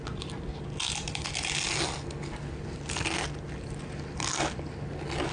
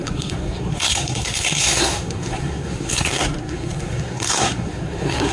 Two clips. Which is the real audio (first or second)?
first